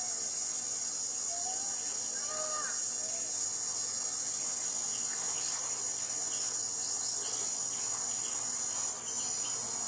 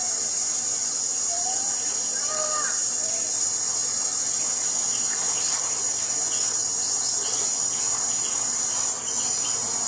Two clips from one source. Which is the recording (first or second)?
first